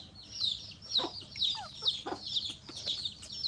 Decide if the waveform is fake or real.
real